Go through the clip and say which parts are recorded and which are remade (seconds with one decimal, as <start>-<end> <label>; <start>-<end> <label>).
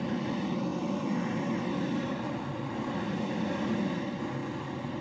0.0-5.0 recorded